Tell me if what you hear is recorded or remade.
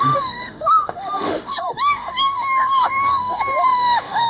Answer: remade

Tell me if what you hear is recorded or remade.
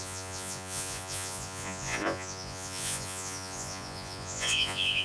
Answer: remade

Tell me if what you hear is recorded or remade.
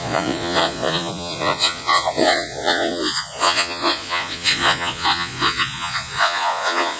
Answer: remade